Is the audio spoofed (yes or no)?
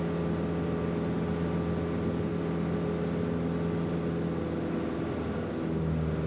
no